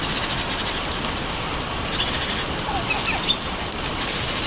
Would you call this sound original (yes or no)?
yes